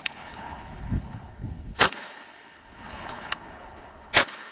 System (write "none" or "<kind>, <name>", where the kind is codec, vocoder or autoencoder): codec, HILCodec